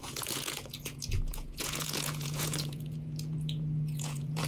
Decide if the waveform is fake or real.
fake